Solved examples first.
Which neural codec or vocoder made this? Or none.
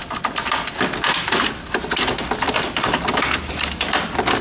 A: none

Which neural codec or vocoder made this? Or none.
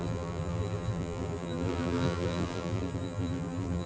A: vocoder, BigVGAN v2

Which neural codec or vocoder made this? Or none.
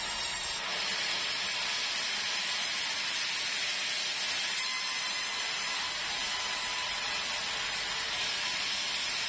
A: none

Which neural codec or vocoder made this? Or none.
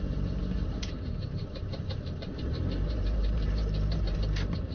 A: vocoder, BigVGAN v2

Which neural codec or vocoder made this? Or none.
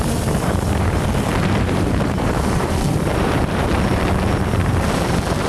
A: vocoder, BigVGAN v2